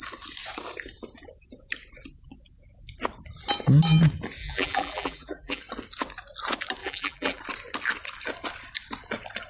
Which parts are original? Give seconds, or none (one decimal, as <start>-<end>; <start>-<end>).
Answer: 0.0-4.4; 5.6-6.8; 7.4-9.5